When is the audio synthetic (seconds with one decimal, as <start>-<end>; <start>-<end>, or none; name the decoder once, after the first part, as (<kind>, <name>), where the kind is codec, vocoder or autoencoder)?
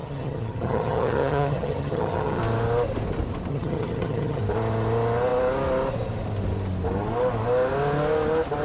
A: 0.0-2.4 (vocoder, HiFi-GAN); 3.5-4.4